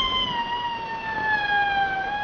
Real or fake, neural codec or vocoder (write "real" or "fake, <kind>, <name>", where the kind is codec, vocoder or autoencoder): real